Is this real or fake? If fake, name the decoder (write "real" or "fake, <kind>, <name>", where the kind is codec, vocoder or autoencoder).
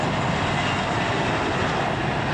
real